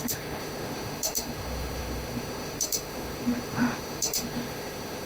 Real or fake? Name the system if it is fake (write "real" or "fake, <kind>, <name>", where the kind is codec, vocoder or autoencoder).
fake, autoencoder, DAC-VAE